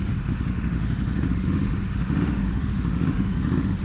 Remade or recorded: remade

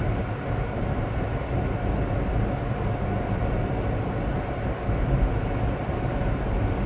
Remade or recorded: recorded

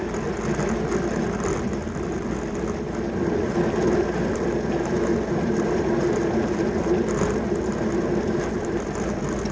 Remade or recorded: recorded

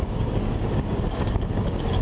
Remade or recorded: remade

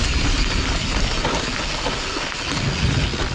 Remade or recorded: recorded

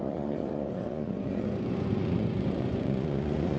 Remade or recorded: remade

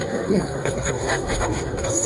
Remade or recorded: remade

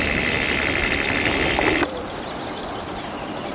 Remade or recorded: recorded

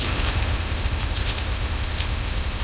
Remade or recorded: remade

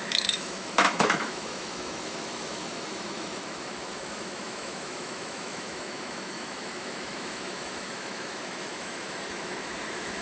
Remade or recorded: remade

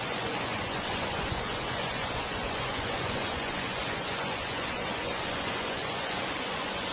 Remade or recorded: remade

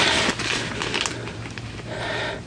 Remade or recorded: recorded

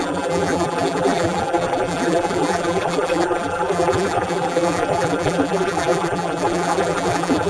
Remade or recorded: remade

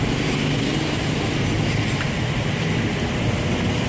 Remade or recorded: recorded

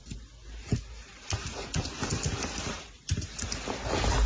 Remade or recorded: recorded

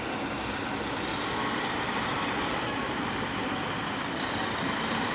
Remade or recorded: recorded